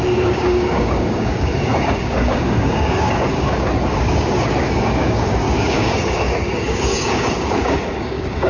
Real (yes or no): no